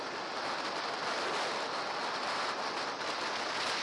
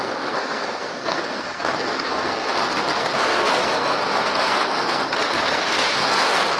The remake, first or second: second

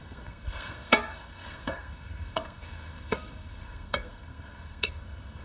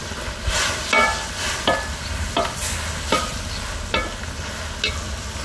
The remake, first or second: first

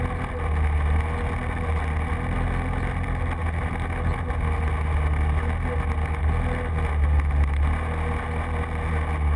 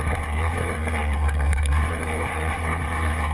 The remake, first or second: second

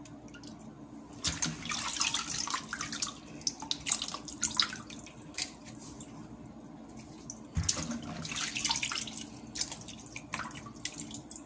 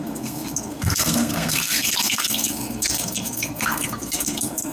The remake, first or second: second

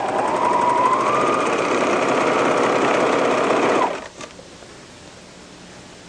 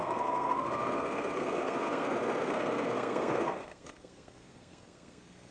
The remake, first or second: second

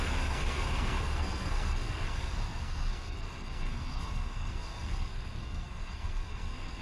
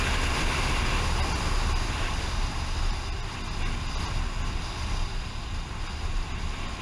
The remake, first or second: first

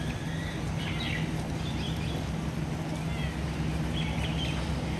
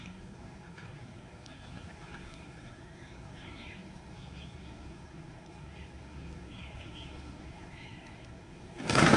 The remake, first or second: second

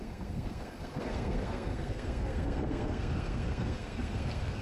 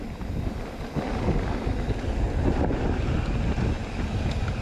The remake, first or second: first